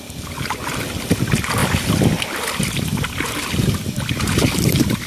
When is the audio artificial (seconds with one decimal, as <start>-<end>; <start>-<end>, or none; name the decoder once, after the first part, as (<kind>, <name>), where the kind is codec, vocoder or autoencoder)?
none